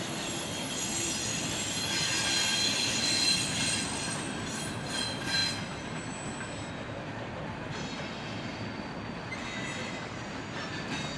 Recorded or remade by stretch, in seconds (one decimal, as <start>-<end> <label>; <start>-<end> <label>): 0.0-11.2 recorded